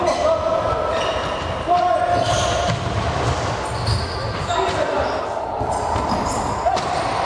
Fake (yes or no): no